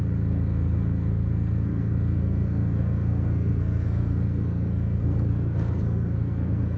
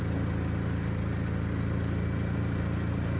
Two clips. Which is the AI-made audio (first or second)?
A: first